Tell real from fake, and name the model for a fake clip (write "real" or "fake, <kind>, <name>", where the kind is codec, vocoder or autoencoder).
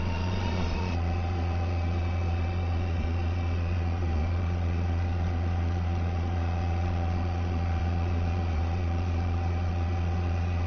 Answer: fake, vocoder, Vocos